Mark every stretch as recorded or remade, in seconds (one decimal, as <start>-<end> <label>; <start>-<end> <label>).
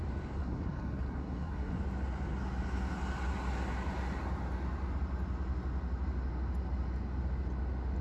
0.0-0.4 recorded; 0.4-1.8 remade; 1.8-8.0 recorded